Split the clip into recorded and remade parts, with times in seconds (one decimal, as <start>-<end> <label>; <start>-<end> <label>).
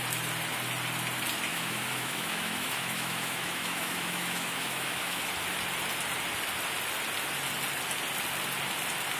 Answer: 0.0-1.5 recorded; 1.5-5.2 remade; 5.2-9.2 recorded